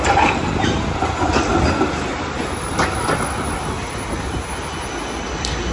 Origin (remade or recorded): recorded